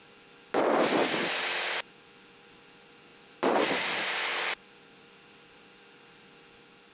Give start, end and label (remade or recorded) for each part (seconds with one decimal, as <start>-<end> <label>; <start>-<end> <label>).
0.0-4.3 recorded; 4.3-6.2 remade; 6.2-6.9 recorded